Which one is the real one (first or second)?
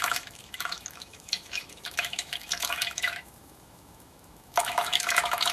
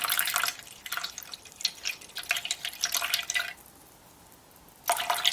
second